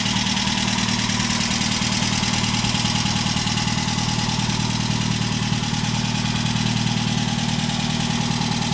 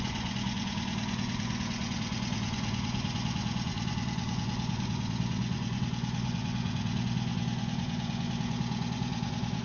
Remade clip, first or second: second